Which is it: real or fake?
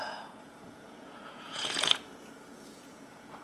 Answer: fake